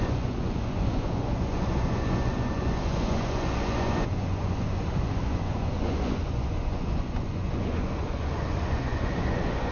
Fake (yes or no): yes